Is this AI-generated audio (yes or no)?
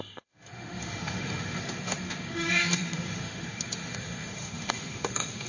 yes